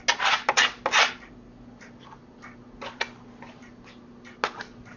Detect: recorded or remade recorded